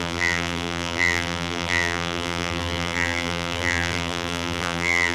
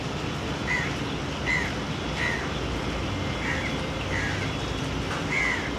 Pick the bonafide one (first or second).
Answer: second